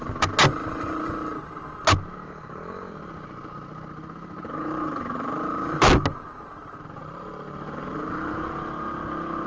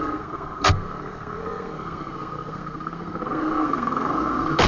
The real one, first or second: first